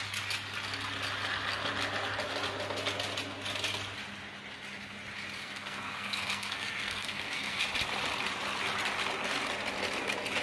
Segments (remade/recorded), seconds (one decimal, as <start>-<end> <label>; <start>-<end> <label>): 0.0-5.4 recorded; 5.4-7.6 remade; 7.6-10.4 recorded